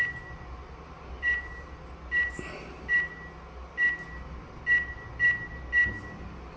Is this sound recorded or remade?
recorded